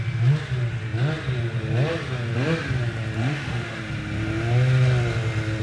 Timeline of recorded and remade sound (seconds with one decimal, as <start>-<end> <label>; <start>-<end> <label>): 0.0-3.2 recorded; 3.2-3.8 remade; 3.8-5.6 recorded